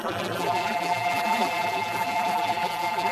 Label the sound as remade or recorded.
remade